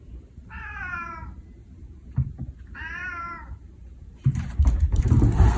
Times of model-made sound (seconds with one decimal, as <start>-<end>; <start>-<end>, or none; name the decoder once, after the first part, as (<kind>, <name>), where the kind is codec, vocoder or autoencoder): 0.0-5.6 (vocoder, BigVGAN v2)